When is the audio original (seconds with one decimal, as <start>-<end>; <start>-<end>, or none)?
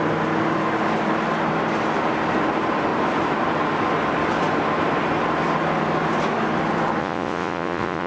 0.0-7.0